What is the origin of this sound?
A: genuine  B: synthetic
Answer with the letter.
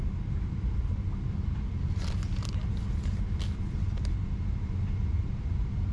A